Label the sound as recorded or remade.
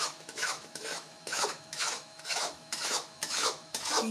remade